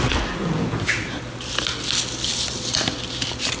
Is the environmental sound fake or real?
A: real